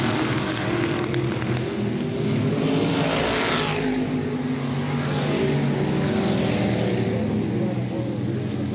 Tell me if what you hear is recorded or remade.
recorded